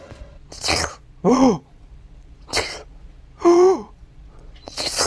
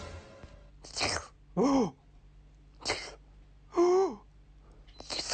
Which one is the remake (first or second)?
first